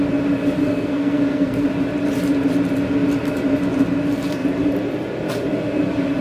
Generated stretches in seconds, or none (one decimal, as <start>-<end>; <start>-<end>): 0.6-1.7